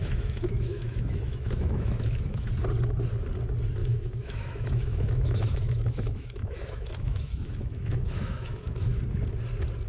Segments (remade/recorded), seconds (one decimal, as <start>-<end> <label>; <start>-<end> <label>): 0.0-2.5 remade; 2.5-3.8 recorded; 3.8-9.0 remade; 9.0-9.9 recorded

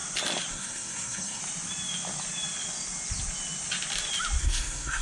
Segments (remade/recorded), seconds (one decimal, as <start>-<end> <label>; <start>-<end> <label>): 0.0-0.5 recorded; 0.5-1.4 remade; 1.4-4.4 recorded; 4.4-5.0 remade

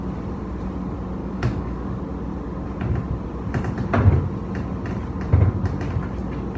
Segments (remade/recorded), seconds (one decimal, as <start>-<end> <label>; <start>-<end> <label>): 0.0-1.2 recorded; 1.2-2.0 remade; 2.0-6.6 recorded